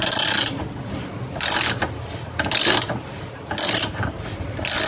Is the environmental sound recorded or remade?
recorded